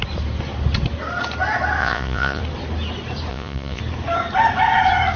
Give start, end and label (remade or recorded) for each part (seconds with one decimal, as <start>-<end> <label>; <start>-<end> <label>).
0.0-1.8 recorded; 1.8-2.4 remade; 2.4-3.3 recorded; 3.3-3.8 remade; 3.8-5.2 recorded

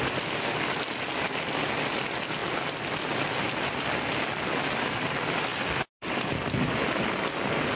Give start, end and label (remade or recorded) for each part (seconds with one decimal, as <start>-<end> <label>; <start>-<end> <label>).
0.0-7.8 recorded